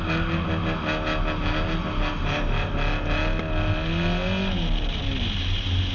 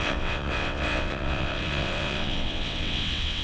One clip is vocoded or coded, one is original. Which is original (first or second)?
first